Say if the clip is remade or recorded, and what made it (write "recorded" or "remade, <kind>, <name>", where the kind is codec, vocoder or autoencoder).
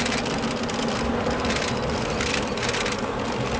recorded